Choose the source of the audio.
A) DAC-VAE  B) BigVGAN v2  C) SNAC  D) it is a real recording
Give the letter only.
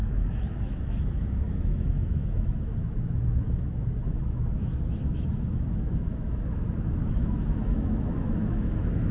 A